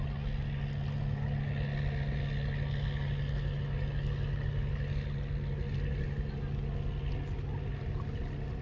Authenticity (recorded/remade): recorded